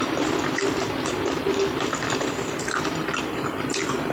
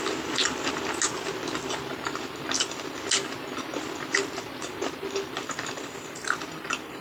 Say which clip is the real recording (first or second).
second